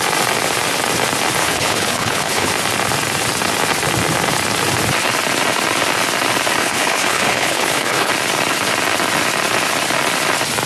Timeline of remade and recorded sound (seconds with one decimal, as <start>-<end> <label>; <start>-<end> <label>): 0.0-1.4 recorded; 1.4-2.5 remade; 2.5-6.6 recorded; 6.6-8.1 remade; 8.1-10.7 recorded